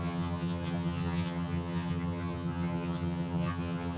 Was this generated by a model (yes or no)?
yes